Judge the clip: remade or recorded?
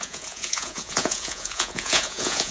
remade